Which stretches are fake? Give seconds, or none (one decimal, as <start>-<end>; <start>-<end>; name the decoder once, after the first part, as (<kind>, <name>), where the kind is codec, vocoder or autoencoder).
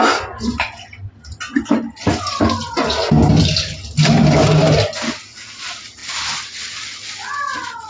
none